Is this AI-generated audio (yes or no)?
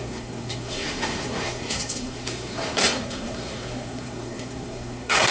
yes